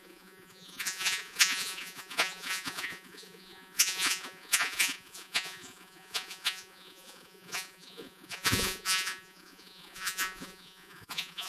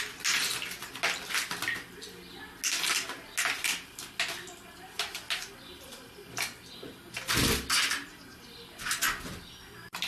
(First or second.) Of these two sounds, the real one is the second